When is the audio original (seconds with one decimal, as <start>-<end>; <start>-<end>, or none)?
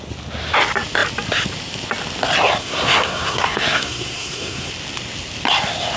0.0-2.6; 4.7-6.0